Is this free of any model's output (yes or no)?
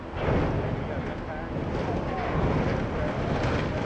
yes